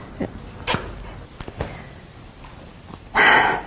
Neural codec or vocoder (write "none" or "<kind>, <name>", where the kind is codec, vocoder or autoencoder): none